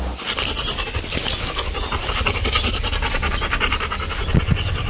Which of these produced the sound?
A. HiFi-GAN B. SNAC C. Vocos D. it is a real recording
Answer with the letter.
D